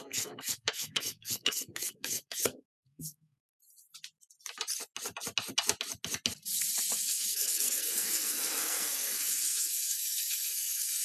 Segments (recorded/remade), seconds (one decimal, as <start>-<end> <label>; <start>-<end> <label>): 0.0-3.6 remade; 3.6-7.0 recorded; 7.0-11.0 remade